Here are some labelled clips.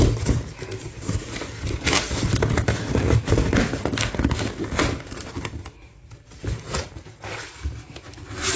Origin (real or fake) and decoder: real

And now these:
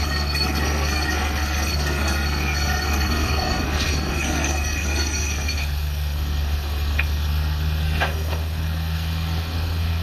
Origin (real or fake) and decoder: fake, codec, SNAC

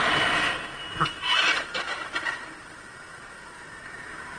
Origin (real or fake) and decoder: real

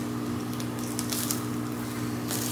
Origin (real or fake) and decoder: real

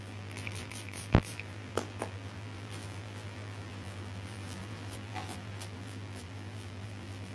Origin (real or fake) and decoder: fake, vocoder, BigVGAN v2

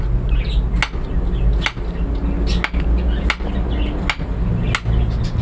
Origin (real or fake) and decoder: real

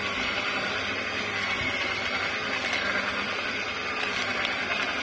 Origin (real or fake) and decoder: real